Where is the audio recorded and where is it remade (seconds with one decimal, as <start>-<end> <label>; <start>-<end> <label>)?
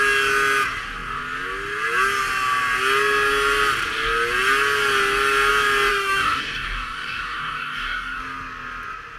0.0-5.9 recorded; 5.9-8.2 remade; 8.2-9.2 recorded